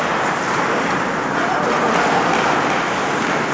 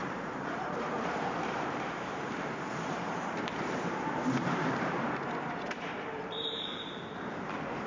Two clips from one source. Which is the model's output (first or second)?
second